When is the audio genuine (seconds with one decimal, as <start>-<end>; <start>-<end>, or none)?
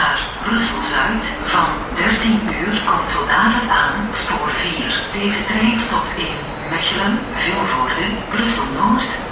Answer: 0.0-9.3